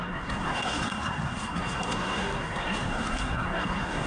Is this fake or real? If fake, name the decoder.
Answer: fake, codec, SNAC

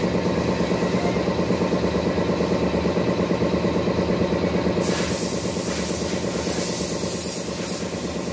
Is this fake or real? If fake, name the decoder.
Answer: real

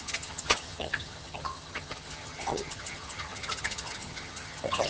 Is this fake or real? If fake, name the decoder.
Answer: fake, vocoder, HiFi-GAN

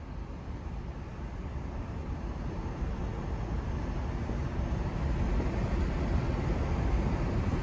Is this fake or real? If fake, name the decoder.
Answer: real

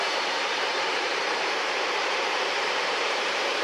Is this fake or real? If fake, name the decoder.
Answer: fake, vocoder, BigVGAN v2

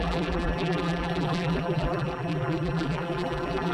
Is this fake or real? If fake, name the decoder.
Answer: fake, vocoder, BigVGAN v2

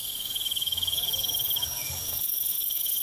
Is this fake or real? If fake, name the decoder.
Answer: fake, codec, DAC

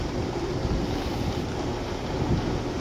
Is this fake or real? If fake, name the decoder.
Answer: real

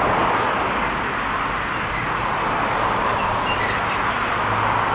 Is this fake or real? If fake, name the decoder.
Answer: real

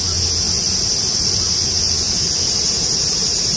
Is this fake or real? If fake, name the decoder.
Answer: real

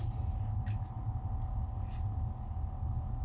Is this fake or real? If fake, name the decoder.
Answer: real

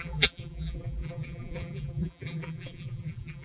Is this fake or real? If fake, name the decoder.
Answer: fake, vocoder, BigVGAN v2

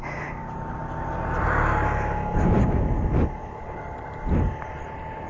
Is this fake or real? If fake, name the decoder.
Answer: real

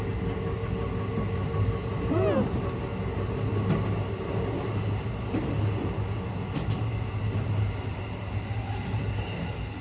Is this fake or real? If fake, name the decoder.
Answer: real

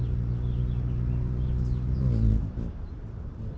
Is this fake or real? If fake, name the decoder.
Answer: real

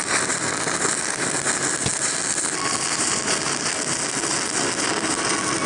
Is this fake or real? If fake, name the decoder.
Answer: real